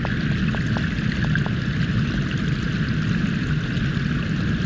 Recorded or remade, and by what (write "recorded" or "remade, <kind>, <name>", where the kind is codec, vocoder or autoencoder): recorded